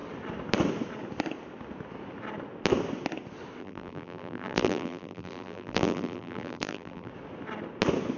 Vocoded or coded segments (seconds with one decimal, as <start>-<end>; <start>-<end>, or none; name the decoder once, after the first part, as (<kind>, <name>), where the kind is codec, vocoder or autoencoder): 3.6-7.1 (vocoder, BigVGAN v2)